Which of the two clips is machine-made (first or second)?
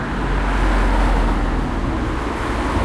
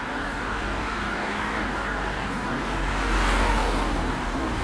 second